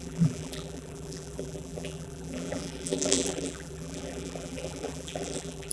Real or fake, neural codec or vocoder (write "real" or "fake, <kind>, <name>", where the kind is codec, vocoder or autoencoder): fake, vocoder, BigVGAN v2